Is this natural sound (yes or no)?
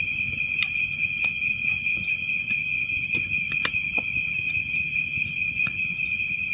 no